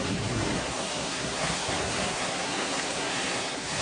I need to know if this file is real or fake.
fake